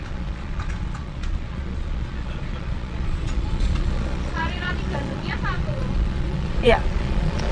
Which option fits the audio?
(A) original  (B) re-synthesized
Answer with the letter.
B